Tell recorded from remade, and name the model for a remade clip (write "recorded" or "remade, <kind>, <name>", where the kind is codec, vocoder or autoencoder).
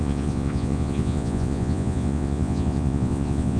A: remade, vocoder, Vocos